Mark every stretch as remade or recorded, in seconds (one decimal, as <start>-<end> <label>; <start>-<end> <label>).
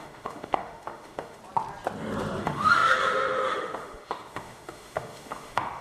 0.0-1.4 remade; 1.4-2.4 recorded; 2.4-5.8 remade